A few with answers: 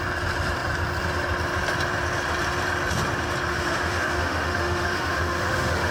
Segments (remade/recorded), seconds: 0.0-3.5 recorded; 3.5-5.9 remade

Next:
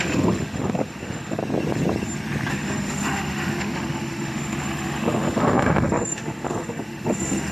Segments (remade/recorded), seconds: 0.0-1.4 remade; 1.4-2.5 recorded; 2.5-7.5 remade